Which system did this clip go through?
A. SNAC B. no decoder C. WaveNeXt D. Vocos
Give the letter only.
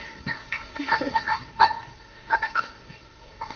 A